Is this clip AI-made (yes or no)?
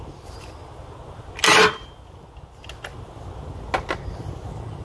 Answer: no